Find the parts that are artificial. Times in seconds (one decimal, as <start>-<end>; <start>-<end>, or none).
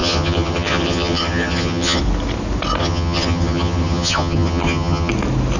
0.0-2.0; 2.8-5.1